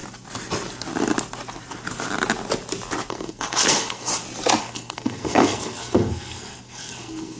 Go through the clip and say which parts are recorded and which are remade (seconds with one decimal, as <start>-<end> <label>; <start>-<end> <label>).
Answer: 0.0-3.1 recorded; 3.1-4.1 remade; 4.1-4.6 recorded; 4.6-7.4 remade